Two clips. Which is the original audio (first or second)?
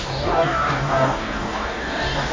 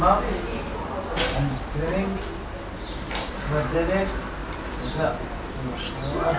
second